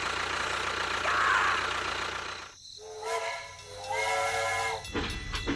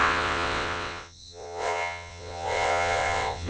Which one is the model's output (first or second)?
second